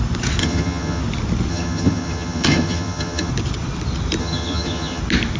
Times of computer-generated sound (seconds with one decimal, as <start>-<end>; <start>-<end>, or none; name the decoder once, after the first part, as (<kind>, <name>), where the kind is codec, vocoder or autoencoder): 0.4-1.0 (vocoder, HiFi-GAN); 1.5-3.3; 4.2-5.0